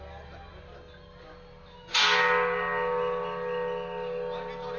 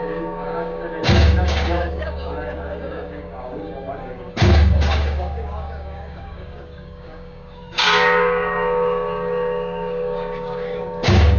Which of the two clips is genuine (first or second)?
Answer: first